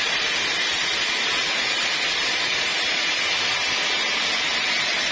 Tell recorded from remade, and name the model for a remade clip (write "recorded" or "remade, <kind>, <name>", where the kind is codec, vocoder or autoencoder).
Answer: recorded